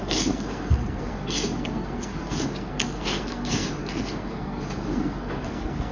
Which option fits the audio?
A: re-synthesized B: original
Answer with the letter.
A